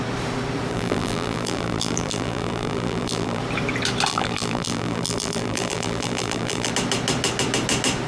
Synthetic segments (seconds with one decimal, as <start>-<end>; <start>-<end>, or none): 0.7-3.4; 4.1-6.7